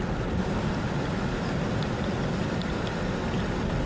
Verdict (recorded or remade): recorded